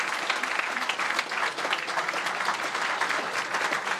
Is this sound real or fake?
real